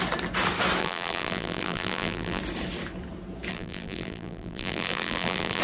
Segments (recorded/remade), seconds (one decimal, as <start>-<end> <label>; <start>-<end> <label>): 0.0-0.8 recorded; 0.8-2.4 remade; 2.4-3.5 recorded; 3.5-5.6 remade